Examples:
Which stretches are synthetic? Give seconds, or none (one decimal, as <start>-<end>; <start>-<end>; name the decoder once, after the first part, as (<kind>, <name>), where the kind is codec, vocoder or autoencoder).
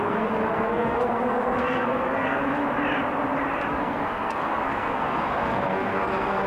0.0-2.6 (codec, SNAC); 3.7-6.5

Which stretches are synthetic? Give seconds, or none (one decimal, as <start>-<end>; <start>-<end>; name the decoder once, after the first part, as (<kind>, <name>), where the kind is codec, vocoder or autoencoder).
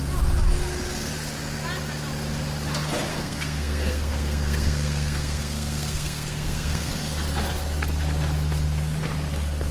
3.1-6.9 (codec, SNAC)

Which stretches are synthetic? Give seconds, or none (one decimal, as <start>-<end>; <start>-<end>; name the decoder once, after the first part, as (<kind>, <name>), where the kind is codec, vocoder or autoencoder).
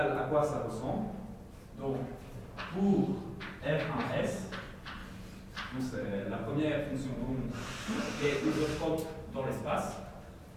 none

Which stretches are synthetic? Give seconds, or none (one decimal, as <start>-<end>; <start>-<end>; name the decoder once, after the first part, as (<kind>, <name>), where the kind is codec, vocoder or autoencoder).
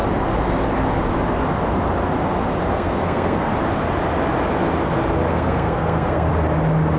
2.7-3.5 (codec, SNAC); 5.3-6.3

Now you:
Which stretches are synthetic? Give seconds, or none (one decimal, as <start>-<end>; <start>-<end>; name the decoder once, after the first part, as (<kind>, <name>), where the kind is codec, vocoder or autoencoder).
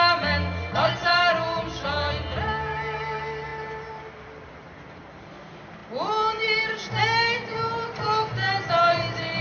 none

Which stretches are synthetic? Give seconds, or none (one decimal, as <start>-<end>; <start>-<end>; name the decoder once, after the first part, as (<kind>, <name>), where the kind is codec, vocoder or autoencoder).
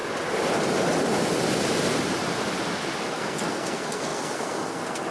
3.1-5.1 (codec, SNAC)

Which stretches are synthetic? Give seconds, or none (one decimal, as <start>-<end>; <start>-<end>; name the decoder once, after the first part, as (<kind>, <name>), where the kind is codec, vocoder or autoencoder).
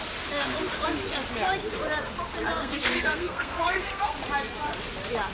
2.6-4.2 (codec, SNAC)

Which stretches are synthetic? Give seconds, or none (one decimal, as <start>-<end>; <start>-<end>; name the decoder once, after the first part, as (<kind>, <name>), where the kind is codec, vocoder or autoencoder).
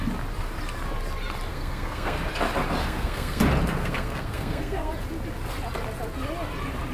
1.5-2.3 (codec, SNAC); 2.8-3.4; 3.8-4.9